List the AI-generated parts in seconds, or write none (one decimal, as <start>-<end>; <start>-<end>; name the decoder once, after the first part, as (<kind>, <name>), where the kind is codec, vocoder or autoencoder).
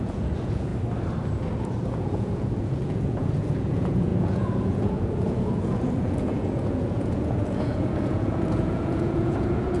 0.0-0.7 (vocoder, Vocos); 1.6-9.8